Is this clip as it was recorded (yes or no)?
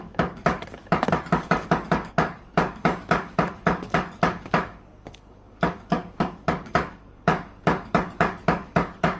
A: no